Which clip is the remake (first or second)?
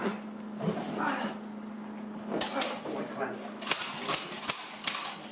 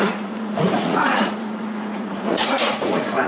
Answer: second